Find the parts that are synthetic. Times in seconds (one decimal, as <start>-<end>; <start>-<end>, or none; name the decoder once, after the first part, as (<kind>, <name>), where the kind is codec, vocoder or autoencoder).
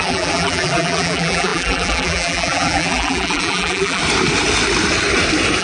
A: 0.0-4.0 (vocoder, BigVGAN v2)